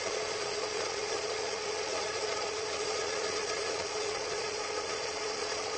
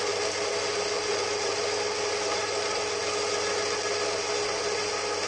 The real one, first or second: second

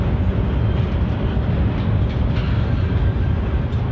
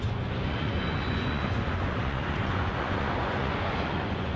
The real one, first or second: first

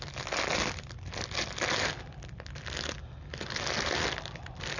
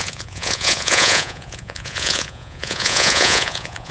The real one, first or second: first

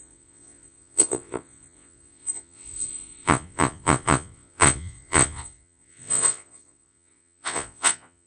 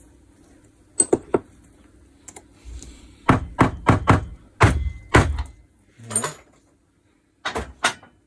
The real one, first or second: second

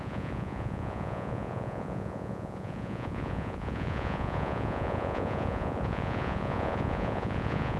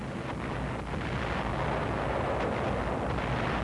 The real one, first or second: second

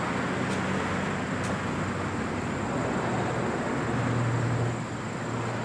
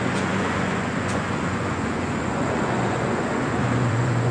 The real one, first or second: first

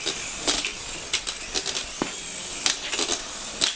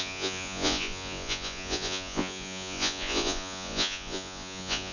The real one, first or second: first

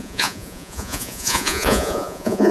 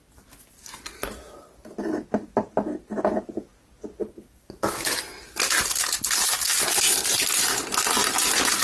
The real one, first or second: second